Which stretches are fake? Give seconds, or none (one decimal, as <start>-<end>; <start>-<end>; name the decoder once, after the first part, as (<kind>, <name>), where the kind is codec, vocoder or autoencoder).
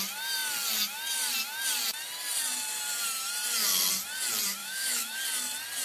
4.6-5.2 (autoencoder, DAC-VAE)